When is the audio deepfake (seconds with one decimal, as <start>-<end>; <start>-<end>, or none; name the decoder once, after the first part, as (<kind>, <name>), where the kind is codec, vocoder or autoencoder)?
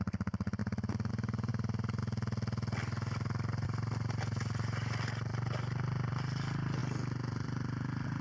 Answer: none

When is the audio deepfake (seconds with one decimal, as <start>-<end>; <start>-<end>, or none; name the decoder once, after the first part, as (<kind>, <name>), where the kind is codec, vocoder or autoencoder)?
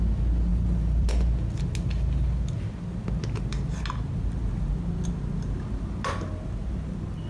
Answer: 0.5-1.1 (vocoder, BigVGAN v2)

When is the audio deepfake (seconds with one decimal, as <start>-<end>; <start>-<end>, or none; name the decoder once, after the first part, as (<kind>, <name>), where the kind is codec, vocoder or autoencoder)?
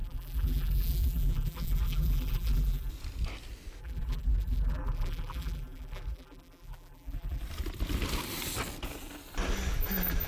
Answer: 0.0-2.9 (vocoder, BigVGAN v2); 3.8-7.4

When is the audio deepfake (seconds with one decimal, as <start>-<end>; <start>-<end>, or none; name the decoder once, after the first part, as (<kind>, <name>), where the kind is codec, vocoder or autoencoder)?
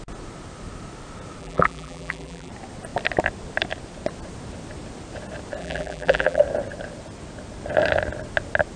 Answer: 1.4-2.5 (vocoder, BigVGAN v2); 5.6-6.4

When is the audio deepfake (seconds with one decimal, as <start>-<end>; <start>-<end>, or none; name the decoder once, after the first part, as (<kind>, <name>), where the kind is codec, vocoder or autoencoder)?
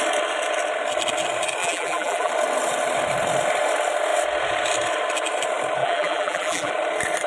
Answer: 1.6-2.3 (vocoder, BigVGAN v2); 5.8-6.7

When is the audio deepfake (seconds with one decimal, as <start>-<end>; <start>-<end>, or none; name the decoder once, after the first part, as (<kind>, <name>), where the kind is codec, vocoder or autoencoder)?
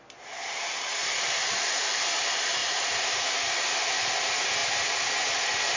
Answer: 0.4-2.2 (vocoder, BigVGAN v2); 2.6-3.6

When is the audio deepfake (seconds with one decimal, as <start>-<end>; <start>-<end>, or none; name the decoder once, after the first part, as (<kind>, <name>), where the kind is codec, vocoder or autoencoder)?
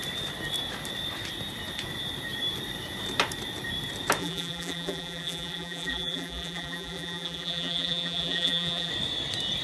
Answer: 4.2-8.9 (vocoder, BigVGAN v2)